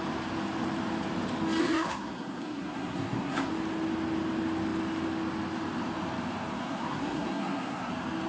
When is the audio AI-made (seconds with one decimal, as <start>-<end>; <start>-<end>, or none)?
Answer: 1.6-3.5; 6.6-7.9